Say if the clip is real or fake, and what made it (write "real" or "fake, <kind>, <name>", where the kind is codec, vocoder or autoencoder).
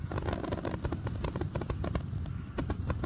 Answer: real